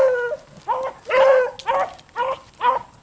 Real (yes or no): yes